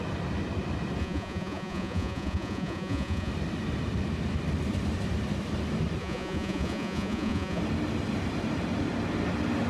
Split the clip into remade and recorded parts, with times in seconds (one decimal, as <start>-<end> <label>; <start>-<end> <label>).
0.0-1.0 recorded; 1.0-3.3 remade; 3.3-6.0 recorded; 6.0-7.6 remade; 7.6-9.7 recorded